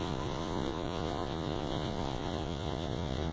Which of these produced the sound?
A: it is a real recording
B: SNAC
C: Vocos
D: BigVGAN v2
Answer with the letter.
C